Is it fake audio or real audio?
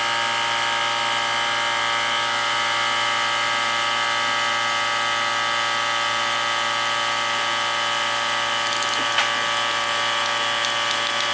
real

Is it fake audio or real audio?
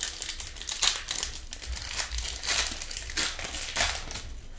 real